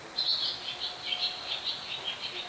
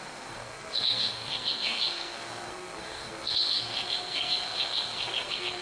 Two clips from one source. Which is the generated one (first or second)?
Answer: second